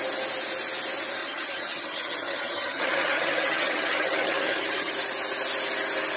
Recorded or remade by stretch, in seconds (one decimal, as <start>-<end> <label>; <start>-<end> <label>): 0.0-1.2 recorded; 1.2-4.9 remade; 4.9-6.2 recorded